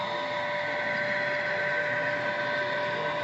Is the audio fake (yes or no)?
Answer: no